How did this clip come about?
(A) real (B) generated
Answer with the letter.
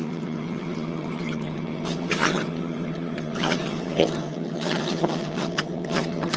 B